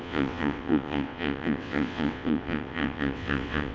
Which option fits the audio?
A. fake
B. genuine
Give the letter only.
A